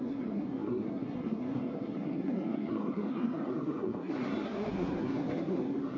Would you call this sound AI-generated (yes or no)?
yes